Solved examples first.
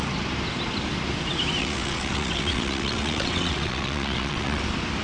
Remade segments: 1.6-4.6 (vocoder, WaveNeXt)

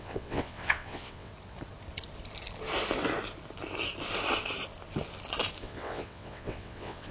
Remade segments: 0.0-1.3 (vocoder, WaveNeXt); 5.6-7.1

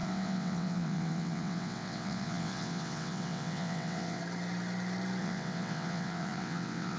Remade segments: 0.0-4.2 (vocoder, WaveNeXt); 5.2-7.0

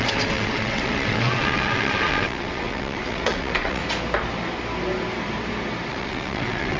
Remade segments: 0.0-3.8 (vocoder, WaveNeXt); 5.9-6.8